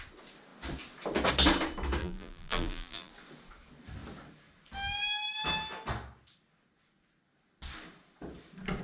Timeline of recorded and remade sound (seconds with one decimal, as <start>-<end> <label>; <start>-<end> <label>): 0.0-2.0 recorded; 2.0-3.1 remade; 3.1-8.8 recorded